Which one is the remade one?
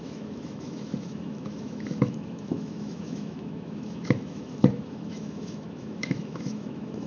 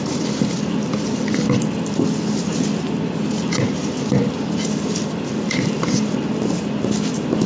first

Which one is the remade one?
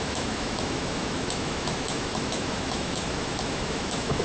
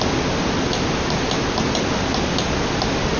first